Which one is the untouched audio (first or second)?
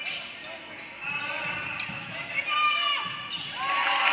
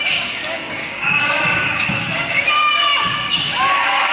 first